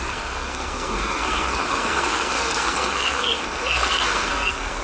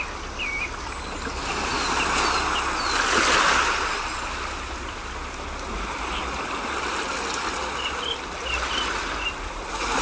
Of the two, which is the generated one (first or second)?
first